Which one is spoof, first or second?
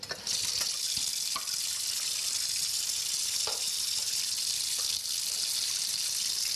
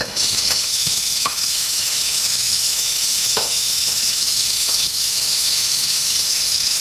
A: second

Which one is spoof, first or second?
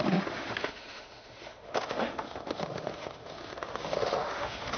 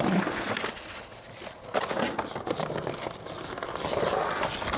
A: first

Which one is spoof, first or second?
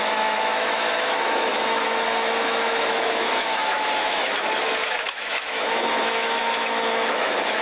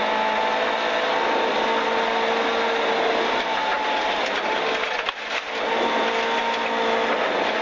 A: first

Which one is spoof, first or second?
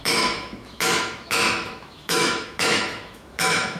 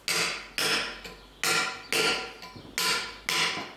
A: first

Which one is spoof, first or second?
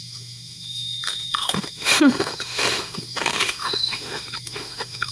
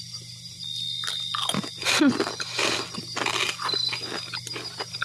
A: first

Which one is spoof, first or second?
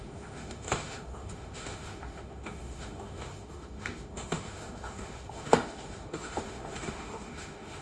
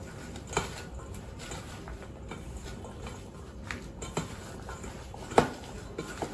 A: first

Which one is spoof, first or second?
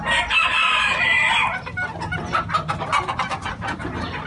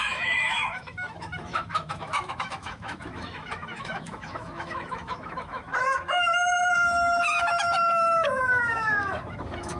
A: second